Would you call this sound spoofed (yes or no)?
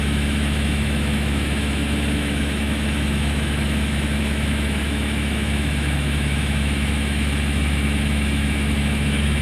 yes